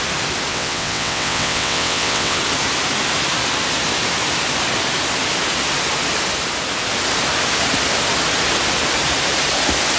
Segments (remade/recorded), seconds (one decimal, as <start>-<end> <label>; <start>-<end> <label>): 0.0-0.5 recorded; 0.5-2.4 remade; 2.4-10.0 recorded